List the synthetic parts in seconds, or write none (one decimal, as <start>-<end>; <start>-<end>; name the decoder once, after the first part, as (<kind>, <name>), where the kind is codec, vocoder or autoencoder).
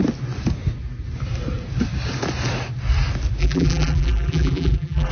3.4-5.1 (vocoder, BigVGAN v2)